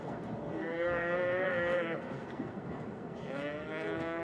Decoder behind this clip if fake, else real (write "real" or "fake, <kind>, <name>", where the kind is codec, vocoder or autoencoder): fake, codec, SNAC